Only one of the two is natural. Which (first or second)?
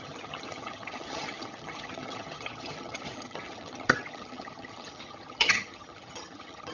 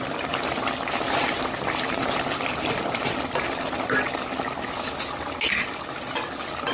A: second